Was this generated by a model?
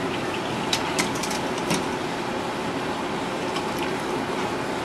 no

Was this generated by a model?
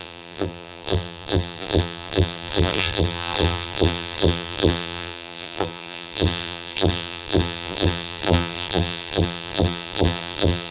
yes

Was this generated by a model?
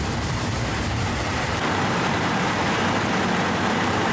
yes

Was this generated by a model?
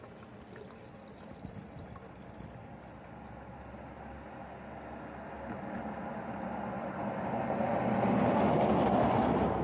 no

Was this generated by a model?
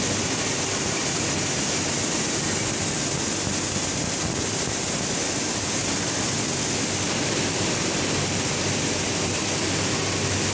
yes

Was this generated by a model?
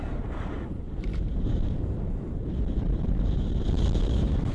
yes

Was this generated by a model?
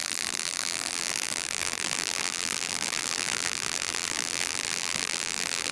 yes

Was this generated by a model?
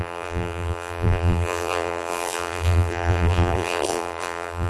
yes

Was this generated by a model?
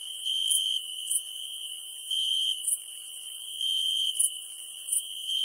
yes